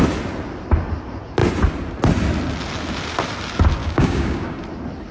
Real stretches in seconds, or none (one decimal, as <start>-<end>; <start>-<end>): 0.0-3.8; 4.6-5.1